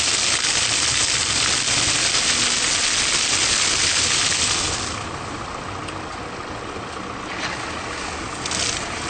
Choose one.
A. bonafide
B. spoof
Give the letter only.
A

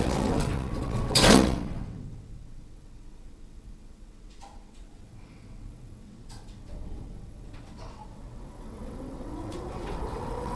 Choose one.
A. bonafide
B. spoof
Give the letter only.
B